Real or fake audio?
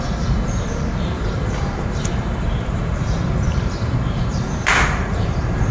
fake